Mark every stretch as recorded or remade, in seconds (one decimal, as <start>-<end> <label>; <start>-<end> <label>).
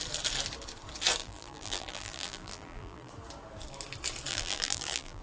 0.0-1.2 recorded; 1.2-3.1 remade; 3.1-4.3 recorded; 4.3-5.2 remade